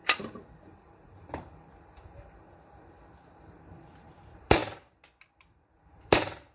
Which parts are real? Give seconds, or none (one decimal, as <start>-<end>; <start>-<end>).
4.6-5.3